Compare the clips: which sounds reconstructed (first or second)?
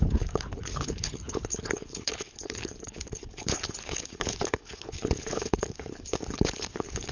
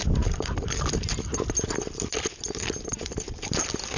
first